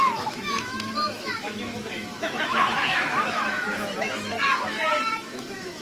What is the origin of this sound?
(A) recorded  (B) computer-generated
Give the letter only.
B